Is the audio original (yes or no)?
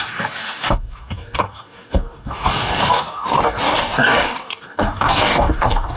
no